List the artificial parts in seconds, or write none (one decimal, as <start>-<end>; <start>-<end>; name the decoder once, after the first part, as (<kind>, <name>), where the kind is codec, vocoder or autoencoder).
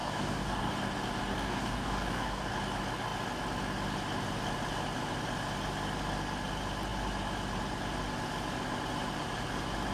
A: 0.0-0.7 (codec, DAC); 1.3-2.5